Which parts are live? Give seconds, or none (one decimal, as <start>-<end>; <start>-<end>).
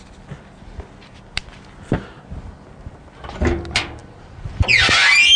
0.0-5.4